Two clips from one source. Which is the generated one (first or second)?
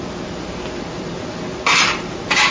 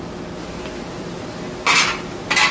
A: first